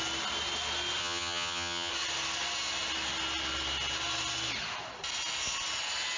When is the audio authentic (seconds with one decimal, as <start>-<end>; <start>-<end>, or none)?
0.0-1.0; 1.9-6.2